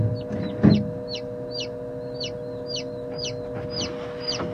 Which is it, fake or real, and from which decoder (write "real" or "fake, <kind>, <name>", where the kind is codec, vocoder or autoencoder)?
real